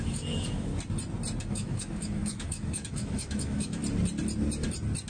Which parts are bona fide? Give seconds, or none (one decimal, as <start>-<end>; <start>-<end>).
0.7-1.4; 3.8-5.1